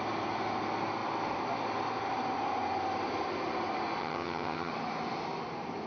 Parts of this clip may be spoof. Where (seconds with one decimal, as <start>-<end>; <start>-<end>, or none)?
4.0-4.7